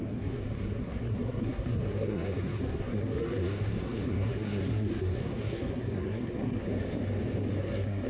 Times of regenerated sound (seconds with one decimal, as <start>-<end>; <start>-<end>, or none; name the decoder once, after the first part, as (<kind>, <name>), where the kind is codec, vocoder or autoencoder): 0.0-6.7 (codec, SNAC); 7.6-8.1

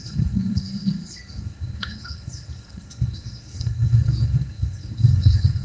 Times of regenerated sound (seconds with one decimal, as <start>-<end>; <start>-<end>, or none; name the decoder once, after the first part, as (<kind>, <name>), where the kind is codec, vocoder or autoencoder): 0.0-5.6 (codec, SNAC)

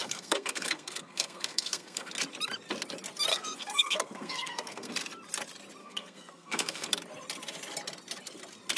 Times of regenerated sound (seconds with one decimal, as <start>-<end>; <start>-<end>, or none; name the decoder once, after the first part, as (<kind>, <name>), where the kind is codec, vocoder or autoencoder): 0.0-2.1 (codec, SNAC); 3.3-4.9; 5.8-6.9

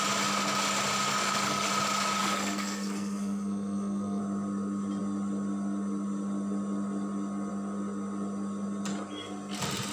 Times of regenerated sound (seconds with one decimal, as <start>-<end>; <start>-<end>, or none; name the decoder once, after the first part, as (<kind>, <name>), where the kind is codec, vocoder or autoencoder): 1.1-1.7 (codec, SNAC); 2.2-4.2

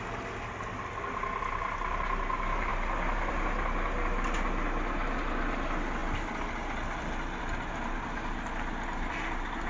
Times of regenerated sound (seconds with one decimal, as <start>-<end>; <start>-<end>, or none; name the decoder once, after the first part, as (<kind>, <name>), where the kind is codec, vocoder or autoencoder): none

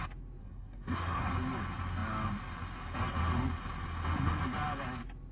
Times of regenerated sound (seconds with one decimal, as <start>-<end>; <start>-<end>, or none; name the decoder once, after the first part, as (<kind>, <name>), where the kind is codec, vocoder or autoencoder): 0.4-1.3 (codec, SNAC)